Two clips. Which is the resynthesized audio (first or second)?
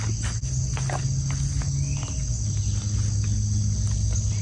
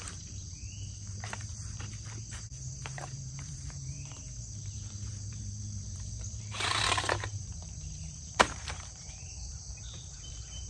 second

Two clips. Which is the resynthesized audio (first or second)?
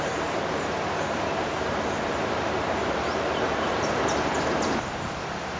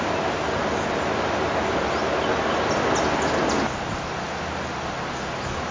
first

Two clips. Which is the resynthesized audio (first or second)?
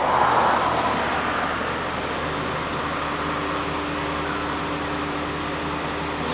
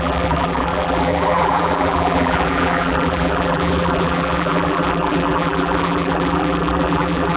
second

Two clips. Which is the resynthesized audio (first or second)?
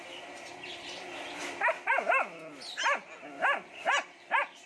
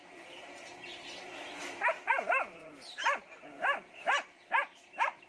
second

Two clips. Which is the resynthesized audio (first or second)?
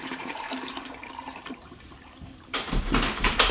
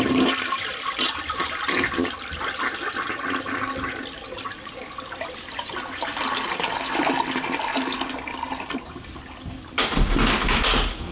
first